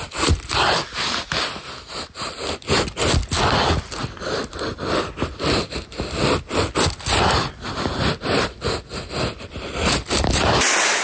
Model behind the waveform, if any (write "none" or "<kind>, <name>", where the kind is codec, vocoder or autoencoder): none